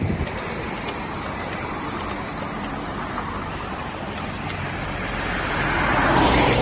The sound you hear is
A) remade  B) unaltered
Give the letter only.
B